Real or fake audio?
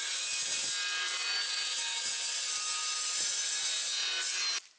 real